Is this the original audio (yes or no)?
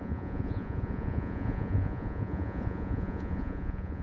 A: no